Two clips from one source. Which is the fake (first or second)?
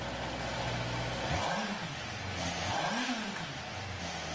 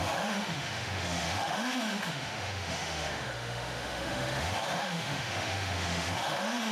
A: second